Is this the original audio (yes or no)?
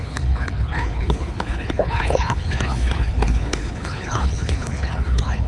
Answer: no